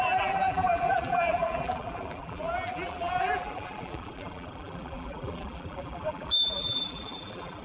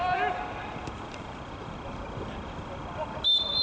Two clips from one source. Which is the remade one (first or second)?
first